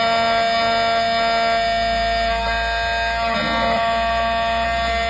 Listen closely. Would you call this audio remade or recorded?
recorded